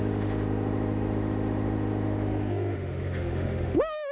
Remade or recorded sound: remade